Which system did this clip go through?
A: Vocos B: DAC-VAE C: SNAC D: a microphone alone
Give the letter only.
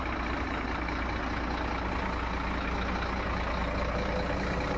D